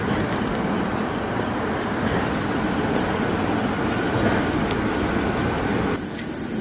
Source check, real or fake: real